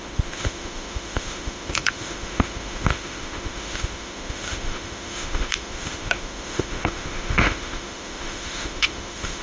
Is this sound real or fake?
fake